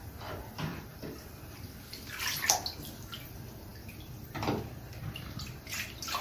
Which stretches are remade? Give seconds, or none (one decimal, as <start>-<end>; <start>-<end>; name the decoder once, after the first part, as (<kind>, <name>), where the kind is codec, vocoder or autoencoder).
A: 0.7-1.6 (vocoder, BigVGAN v2); 3.7-6.2